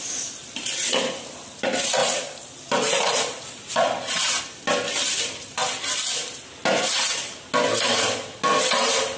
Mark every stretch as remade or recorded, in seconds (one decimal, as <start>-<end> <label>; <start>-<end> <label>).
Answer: 0.0-2.0 recorded; 2.0-4.4 remade; 4.4-8.5 recorded; 8.5-9.2 remade